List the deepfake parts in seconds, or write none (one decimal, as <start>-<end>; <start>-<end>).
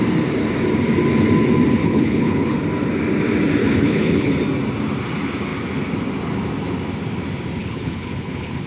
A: 1.8-2.6; 3.6-4.4; 7.6-8.7